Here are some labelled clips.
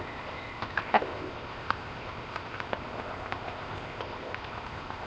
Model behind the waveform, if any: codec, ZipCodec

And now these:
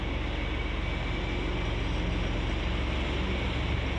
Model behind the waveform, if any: none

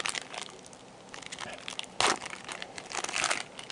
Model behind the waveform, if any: none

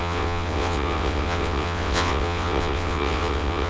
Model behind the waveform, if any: vocoder, WaveNeXt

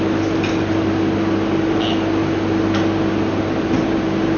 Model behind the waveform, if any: none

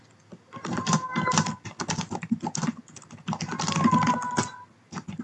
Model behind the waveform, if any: none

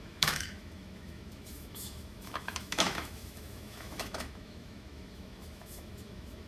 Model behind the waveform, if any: autoencoder, DAC-VAE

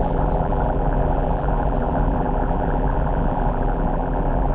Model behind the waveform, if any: vocoder, BigVGAN v2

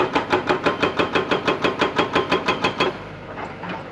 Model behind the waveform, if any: vocoder, BigVGAN v2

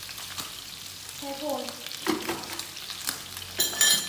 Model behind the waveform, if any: none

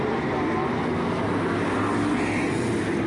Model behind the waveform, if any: none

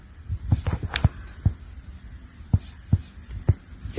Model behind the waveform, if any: none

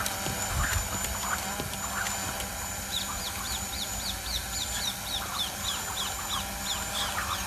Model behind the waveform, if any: none